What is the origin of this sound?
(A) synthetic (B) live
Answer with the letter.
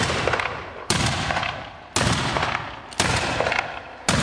B